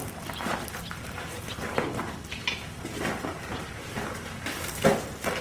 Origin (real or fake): real